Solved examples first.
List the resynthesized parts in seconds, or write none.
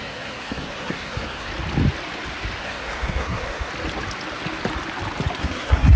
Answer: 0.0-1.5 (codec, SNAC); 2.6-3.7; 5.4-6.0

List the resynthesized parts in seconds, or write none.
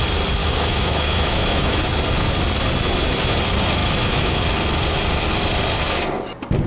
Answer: 0.4-1.8 (autoencoder, DAC-VAE); 3.8-4.4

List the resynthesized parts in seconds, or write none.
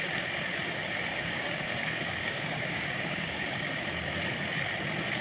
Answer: 1.1-3.8 (codec, DAC)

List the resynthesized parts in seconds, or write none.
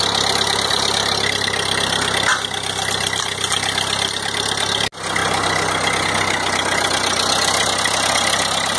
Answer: none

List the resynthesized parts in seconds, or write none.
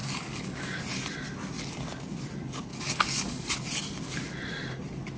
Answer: 0.0-0.8 (codec, DAC); 2.7-3.5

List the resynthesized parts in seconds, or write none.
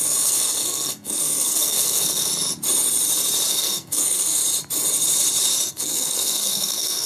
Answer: 0.0-2.3 (codec, SNAC); 3.5-4.4; 5.7-7.1